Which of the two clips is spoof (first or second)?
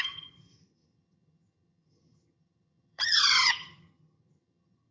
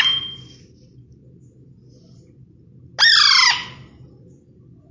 first